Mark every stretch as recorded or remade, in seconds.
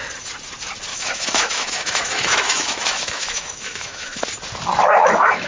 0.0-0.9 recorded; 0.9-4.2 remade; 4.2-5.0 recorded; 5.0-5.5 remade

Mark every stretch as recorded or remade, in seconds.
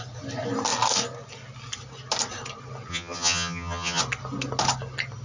0.0-2.9 recorded; 2.9-4.0 remade; 4.0-5.2 recorded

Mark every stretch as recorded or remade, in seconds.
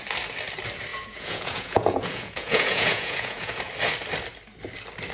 0.0-0.9 recorded; 0.9-3.7 remade; 3.7-5.1 recorded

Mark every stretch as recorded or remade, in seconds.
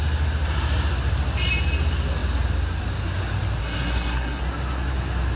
0.0-3.6 recorded; 3.6-4.4 remade; 4.4-5.4 recorded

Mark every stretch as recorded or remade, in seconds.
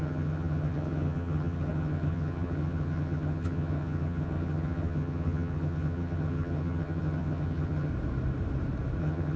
0.0-7.9 remade; 7.9-9.0 recorded; 9.0-9.4 remade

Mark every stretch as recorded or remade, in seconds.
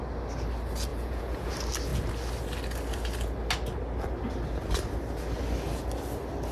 0.0-0.9 recorded; 0.9-1.5 remade; 1.5-6.5 recorded